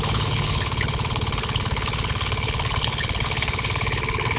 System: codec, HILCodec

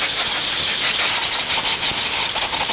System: none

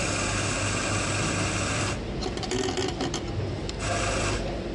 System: none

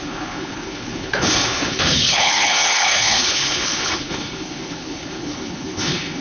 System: codec, HILCodec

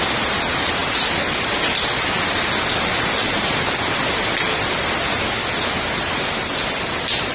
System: none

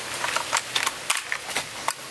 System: none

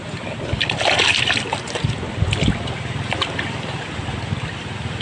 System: none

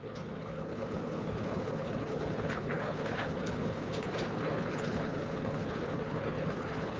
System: codec, HILCodec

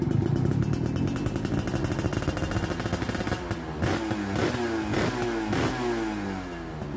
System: none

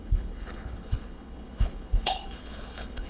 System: codec, HILCodec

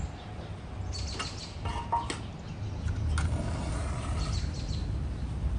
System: none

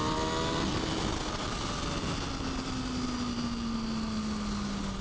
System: none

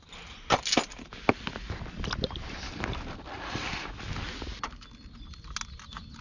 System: none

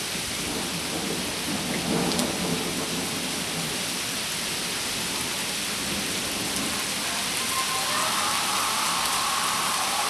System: none